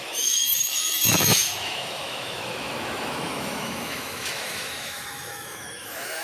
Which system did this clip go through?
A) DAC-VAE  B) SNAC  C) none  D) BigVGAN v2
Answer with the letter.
A